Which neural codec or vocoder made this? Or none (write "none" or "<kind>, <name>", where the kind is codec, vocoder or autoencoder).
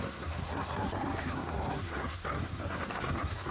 codec, SNAC